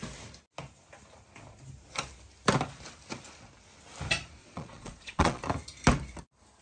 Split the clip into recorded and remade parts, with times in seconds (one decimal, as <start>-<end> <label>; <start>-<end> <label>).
0.0-4.4 recorded; 4.4-5.4 remade; 5.4-6.6 recorded